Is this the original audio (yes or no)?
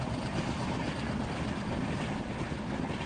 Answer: yes